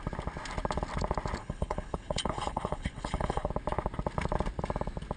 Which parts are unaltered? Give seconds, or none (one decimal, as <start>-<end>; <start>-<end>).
0.0-1.4; 3.5-5.2